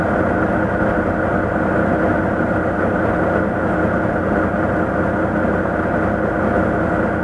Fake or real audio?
real